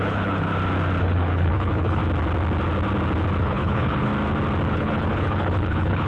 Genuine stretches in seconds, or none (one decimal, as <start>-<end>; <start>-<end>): 0.5-1.0; 2.0-3.4; 4.1-4.7